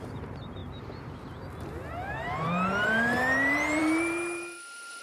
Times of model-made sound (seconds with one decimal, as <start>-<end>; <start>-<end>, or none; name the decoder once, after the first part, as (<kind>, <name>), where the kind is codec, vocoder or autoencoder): 0.0-0.6 (vocoder, BigVGAN v2); 1.9-5.0